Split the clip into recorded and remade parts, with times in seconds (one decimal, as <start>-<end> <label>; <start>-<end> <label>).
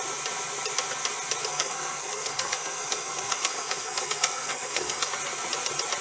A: 0.0-1.5 recorded; 1.5-5.1 remade; 5.1-6.0 recorded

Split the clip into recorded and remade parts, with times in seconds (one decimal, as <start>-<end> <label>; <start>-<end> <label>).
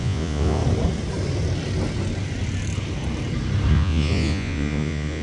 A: 0.0-0.6 remade; 0.6-3.7 recorded; 3.7-5.2 remade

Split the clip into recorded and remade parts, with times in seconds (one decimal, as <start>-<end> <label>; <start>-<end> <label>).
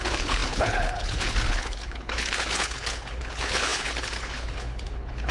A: 0.0-5.3 remade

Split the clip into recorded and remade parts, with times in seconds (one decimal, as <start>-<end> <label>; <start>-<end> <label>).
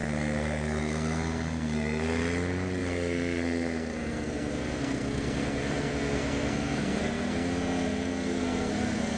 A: 0.0-2.2 remade; 2.2-2.8 recorded; 2.8-9.2 remade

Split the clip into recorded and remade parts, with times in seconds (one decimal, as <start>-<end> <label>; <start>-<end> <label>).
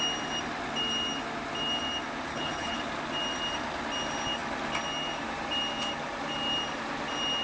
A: 0.0-2.3 recorded; 2.3-2.8 remade; 2.8-7.4 recorded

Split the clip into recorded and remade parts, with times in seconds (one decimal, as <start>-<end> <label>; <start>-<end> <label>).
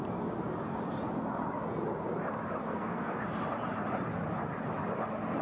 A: 0.0-2.6 recorded; 2.6-3.2 remade; 3.2-5.4 recorded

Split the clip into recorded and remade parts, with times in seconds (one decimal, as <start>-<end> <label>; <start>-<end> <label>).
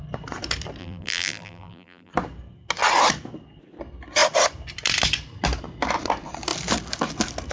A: 0.0-0.8 recorded; 0.8-2.1 remade; 2.1-7.5 recorded